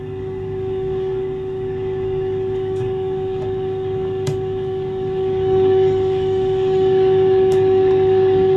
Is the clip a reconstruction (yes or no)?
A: yes